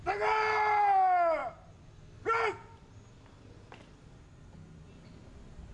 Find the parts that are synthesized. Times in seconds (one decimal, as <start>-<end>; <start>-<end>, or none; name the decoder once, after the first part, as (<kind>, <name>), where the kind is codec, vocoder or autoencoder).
none